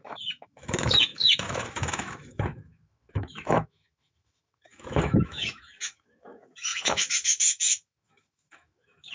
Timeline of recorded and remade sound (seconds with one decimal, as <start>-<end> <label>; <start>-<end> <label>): 0.0-9.1 remade